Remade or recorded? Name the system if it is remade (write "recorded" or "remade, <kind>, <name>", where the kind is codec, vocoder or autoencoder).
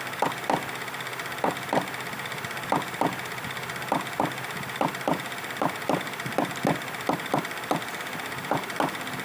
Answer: recorded